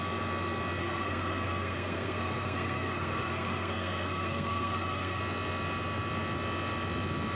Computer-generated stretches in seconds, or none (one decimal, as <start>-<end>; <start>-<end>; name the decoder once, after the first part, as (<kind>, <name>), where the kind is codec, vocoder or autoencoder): 0.8-5.2 (codec, SNAC)